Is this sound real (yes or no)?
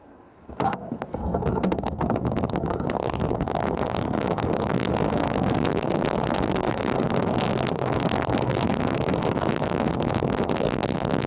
no